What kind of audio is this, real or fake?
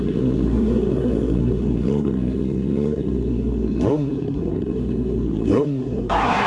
fake